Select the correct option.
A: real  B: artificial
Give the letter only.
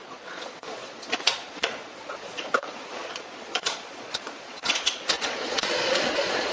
B